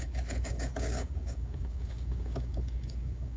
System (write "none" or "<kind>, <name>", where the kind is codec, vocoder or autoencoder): codec, DAC